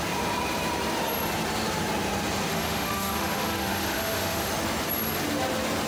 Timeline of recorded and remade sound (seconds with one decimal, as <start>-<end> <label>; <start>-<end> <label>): 0.0-2.5 recorded; 2.5-4.5 remade; 4.5-5.9 recorded